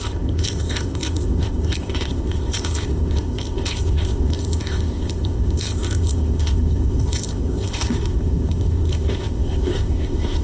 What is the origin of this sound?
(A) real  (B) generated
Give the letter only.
B